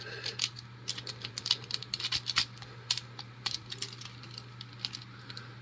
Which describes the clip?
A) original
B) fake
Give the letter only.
B